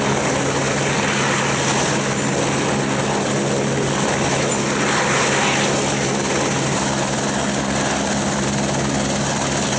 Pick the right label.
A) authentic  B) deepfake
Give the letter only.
A